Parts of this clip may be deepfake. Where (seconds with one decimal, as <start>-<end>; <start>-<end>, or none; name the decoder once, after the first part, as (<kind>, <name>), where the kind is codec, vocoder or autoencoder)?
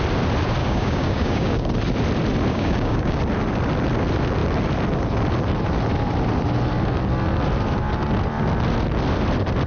0.6-1.7 (codec, DAC); 2.5-3.2